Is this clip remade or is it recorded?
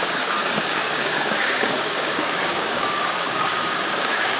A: remade